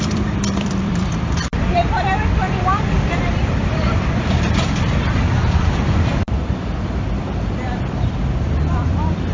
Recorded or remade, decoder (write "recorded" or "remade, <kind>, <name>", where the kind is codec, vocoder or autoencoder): remade, vocoder, BigVGAN v2